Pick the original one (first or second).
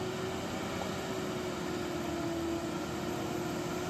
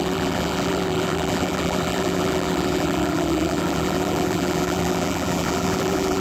first